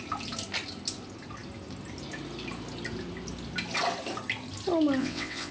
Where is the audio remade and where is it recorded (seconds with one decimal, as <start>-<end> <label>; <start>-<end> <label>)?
0.0-5.0 recorded; 5.0-5.5 remade